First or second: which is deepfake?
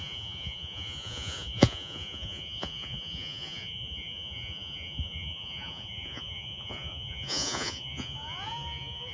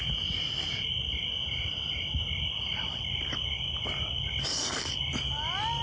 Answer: first